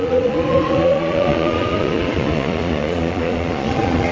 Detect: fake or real fake